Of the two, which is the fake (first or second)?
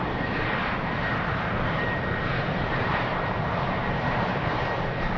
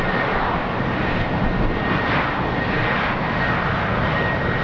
first